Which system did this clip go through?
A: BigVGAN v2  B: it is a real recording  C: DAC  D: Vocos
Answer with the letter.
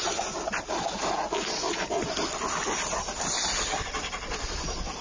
B